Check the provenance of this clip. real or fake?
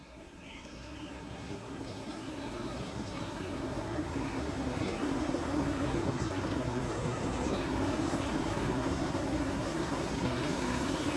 fake